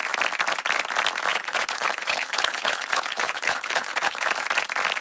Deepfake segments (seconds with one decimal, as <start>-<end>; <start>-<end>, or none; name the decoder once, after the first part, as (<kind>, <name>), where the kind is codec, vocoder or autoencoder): 1.3-4.3 (codec, HILCodec)